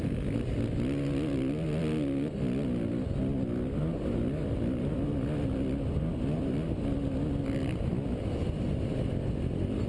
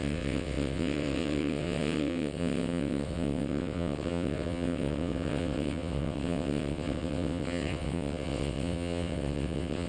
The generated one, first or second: second